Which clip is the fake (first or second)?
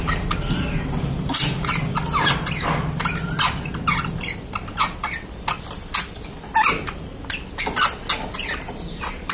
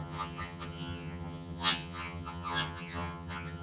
second